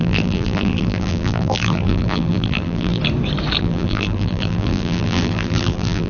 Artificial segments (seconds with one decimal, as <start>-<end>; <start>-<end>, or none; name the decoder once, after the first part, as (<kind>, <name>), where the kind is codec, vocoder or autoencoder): 0.0-3.0 (vocoder, BigVGAN v2); 3.6-6.1